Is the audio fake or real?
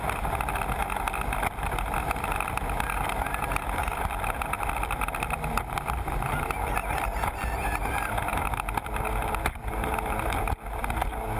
real